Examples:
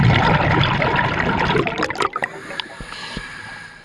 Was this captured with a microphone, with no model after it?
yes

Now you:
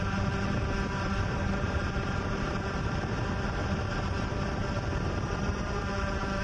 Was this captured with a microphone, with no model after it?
no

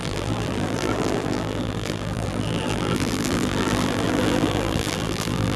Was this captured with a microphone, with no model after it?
no